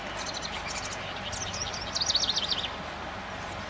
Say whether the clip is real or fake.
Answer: real